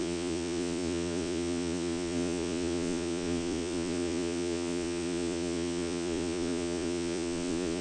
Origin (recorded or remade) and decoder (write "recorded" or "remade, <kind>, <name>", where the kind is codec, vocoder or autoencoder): remade, vocoder, Vocos